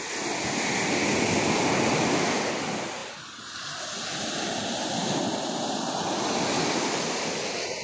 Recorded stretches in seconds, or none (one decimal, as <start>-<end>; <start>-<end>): 0.0-7.8